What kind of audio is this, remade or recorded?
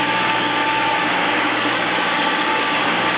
remade